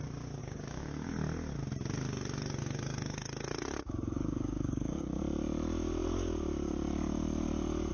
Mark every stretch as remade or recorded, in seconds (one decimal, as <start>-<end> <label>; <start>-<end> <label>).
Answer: 0.0-0.4 recorded; 0.4-1.1 remade; 1.1-2.6 recorded; 2.6-5.2 remade; 5.2-7.9 recorded

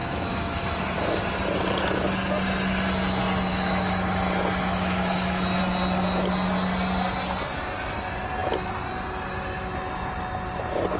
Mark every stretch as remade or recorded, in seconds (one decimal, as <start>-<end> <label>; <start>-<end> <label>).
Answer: 0.0-1.2 remade; 1.2-3.5 recorded; 3.5-5.6 remade; 5.6-11.0 recorded

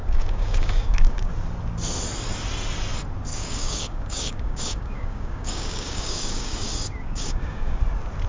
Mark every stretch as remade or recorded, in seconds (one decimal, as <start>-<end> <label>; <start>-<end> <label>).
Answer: 0.0-1.3 remade; 1.3-3.3 recorded; 3.3-7.8 remade; 7.8-8.3 recorded

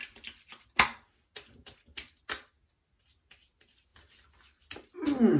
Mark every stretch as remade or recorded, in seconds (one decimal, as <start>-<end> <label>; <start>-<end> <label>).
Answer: 0.0-5.4 recorded

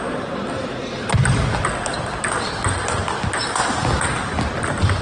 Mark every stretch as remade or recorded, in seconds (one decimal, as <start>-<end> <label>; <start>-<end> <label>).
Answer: 0.0-5.0 recorded